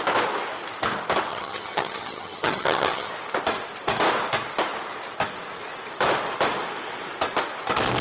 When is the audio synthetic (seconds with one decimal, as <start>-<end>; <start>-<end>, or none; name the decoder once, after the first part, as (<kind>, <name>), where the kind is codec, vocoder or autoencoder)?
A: 1.3-3.1 (vocoder, HiFi-GAN)